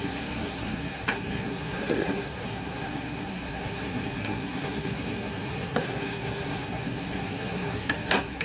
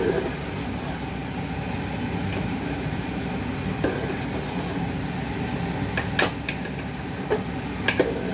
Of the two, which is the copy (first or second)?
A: first